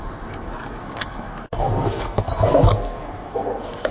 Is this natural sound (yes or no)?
no